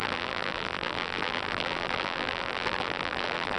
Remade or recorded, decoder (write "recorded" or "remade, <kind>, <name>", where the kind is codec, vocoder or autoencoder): remade, vocoder, BigVGAN v2